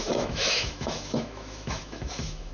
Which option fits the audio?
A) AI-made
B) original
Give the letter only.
A